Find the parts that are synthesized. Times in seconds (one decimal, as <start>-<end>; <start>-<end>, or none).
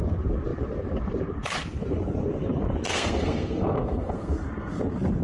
2.9-4.8